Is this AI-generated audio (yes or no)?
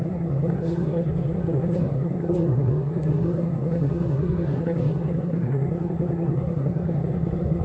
yes